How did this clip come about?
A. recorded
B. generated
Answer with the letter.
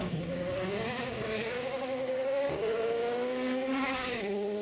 B